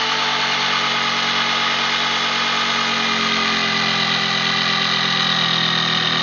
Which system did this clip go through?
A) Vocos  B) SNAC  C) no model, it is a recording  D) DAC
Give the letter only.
C